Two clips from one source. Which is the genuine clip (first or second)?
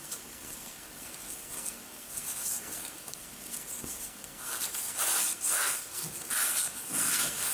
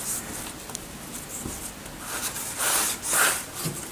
second